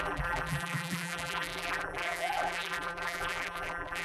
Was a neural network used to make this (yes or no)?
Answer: yes